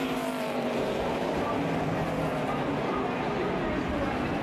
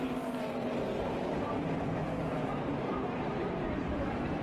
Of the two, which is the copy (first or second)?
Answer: second